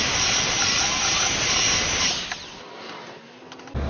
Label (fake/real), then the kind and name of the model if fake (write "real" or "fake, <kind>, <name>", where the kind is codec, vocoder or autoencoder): real